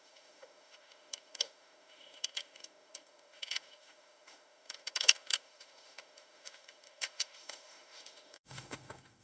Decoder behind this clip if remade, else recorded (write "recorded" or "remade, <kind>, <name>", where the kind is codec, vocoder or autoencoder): remade, autoencoder, DAC-VAE